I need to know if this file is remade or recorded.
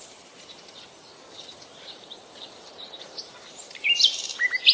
remade